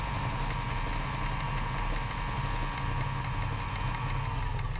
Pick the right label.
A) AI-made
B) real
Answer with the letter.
B